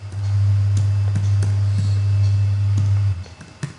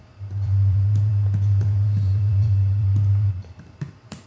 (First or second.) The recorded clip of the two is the first